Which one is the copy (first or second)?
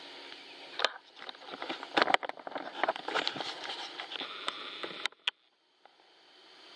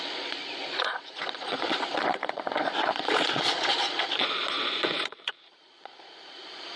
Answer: second